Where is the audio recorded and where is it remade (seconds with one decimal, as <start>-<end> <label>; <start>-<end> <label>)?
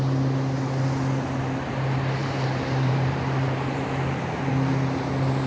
0.0-2.2 recorded; 2.2-4.5 remade; 4.5-5.5 recorded